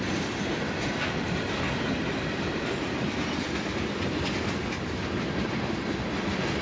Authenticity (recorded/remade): recorded